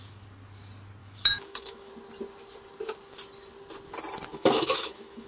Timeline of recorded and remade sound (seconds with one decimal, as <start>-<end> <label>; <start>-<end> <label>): 0.0-1.0 recorded; 1.0-1.9 remade; 1.9-4.3 recorded; 4.3-5.3 remade

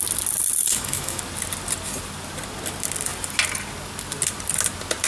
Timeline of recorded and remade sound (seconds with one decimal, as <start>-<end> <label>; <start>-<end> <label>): 0.0-0.6 recorded; 0.6-1.2 remade; 1.2-5.1 recorded

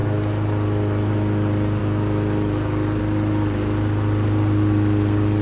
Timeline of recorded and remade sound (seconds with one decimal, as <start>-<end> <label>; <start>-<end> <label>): 0.0-5.4 recorded

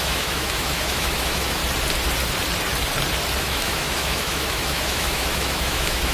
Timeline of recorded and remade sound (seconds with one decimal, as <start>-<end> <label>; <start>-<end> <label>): 0.0-1.6 remade; 1.6-3.4 recorded; 3.4-6.1 remade

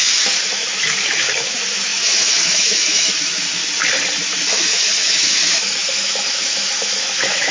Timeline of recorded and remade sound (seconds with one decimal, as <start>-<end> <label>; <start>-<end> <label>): 0.0-3.6 remade; 3.6-4.5 recorded; 4.5-7.5 remade

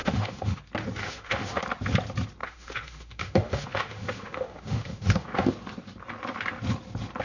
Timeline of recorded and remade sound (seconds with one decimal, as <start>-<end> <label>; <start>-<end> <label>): 0.0-0.6 remade; 0.6-1.0 recorded; 1.0-1.6 remade; 1.6-2.4 recorded; 2.4-5.5 remade; 5.5-7.2 recorded

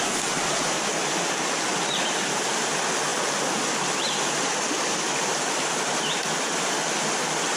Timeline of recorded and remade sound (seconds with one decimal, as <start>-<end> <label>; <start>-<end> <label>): 0.0-7.6 recorded